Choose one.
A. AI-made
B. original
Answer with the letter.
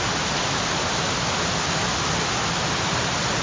B